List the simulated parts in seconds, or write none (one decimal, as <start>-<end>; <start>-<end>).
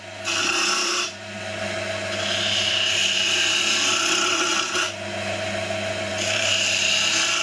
0.8-1.4; 6.1-6.8